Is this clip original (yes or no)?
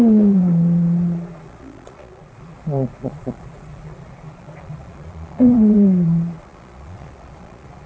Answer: no